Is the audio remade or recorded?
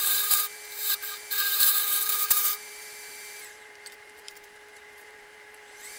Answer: remade